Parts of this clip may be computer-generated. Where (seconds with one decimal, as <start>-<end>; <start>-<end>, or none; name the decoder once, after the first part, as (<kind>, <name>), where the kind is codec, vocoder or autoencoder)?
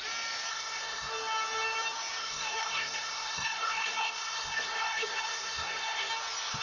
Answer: 0.5-1.1 (codec, SNAC); 2.2-6.1